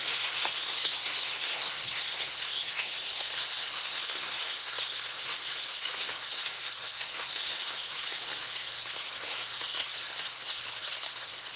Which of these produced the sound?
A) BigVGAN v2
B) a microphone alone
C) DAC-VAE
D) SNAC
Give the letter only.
D